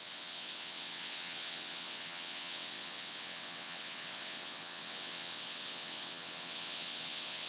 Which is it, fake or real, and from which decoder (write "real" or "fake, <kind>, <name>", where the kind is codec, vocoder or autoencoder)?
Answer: fake, vocoder, WaveNeXt